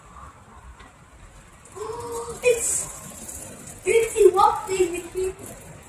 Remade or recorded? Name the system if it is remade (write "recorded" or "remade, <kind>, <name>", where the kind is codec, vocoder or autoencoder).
remade, vocoder, BigVGAN v2